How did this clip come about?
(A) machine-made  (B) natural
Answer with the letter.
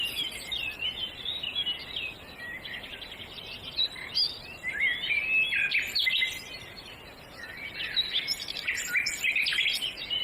B